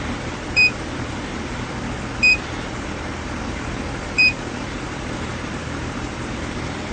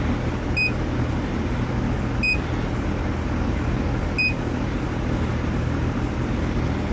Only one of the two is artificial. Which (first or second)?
first